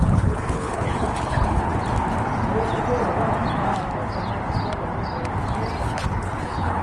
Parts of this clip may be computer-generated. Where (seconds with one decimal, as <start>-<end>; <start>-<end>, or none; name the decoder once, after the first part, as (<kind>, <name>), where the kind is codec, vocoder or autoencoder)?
0.0-1.7 (codec, HILCodec); 5.8-6.8